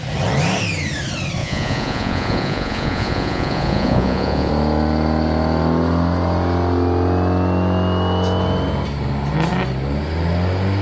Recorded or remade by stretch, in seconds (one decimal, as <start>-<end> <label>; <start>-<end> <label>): 0.0-1.4 recorded; 1.4-4.5 remade; 4.5-10.8 recorded